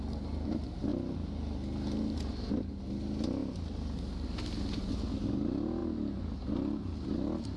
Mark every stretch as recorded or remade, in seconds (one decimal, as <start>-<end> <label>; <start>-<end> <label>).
0.0-7.6 recorded

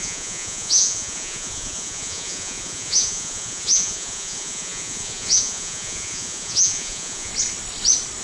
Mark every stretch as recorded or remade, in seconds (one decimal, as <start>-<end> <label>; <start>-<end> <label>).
0.0-7.3 remade; 7.3-8.2 recorded

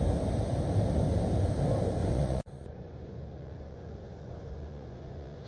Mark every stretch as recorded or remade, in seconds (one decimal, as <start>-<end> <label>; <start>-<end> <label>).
0.0-2.0 recorded; 2.0-5.5 remade

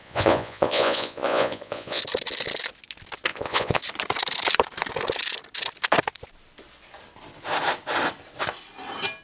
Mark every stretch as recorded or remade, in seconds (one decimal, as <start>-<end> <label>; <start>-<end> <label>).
0.0-2.0 remade; 2.0-3.3 recorded; 3.3-3.8 remade; 3.8-9.2 recorded

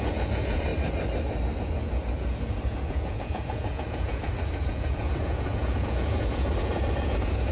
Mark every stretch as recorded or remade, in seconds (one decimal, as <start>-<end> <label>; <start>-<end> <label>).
0.0-0.7 remade; 0.7-1.6 recorded; 1.6-7.5 remade

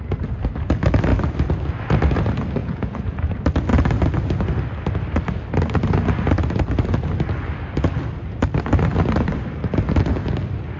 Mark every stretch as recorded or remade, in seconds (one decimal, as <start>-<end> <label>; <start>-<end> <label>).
0.0-2.6 recorded; 2.6-3.2 remade; 3.2-10.8 recorded

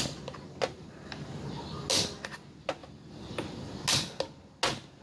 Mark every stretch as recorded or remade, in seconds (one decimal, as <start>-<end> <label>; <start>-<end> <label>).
0.0-5.0 recorded